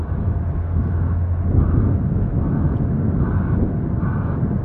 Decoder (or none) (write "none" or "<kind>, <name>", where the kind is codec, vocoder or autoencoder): none